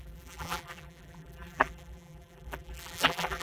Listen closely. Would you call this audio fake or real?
fake